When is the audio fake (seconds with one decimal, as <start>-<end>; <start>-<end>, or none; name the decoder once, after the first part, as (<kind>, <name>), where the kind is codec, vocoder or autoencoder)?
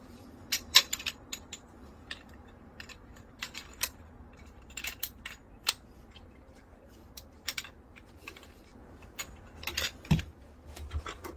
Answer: 0.0-5.4 (vocoder, BigVGAN v2); 6.2-8.7; 10.1-11.4